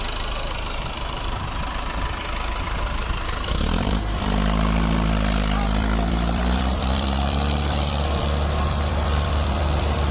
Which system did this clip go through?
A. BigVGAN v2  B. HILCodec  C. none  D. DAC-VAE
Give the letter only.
A